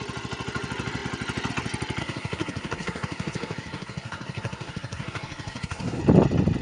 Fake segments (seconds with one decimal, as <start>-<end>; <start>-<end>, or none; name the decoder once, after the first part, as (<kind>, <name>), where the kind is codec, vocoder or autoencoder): 2.0-6.0 (codec, SNAC)